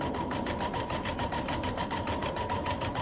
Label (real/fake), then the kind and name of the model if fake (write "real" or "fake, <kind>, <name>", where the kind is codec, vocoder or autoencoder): real